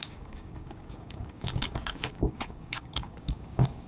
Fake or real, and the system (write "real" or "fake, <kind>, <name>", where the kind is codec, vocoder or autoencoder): fake, codec, DAC